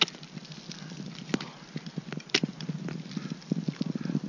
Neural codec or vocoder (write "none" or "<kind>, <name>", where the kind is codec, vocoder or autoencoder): none